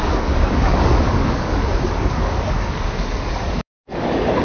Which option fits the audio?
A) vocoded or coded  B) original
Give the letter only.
A